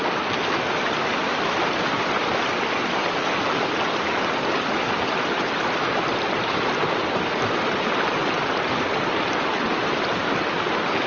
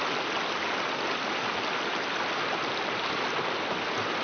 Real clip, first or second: second